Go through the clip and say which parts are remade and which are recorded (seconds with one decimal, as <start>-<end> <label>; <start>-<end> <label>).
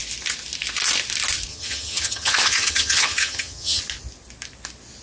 0.0-1.5 recorded; 1.5-3.8 remade; 3.8-5.0 recorded